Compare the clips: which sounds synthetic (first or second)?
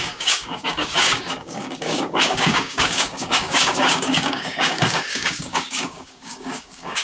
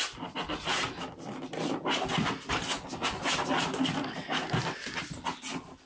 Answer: first